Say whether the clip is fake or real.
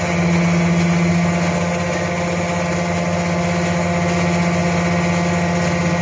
real